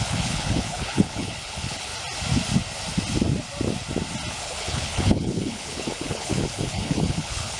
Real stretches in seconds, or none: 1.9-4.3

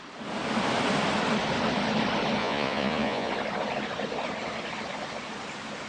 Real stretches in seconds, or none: 0.0-2.4; 3.3-5.9